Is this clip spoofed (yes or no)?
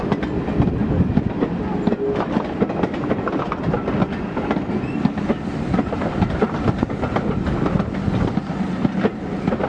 no